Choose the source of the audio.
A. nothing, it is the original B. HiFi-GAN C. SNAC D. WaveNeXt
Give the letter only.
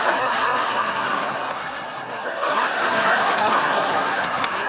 C